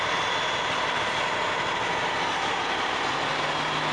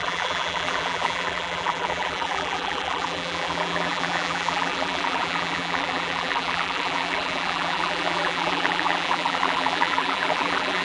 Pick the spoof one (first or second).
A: second